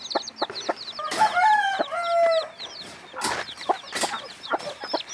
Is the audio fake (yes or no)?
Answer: no